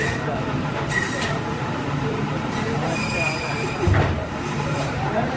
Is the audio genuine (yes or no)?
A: no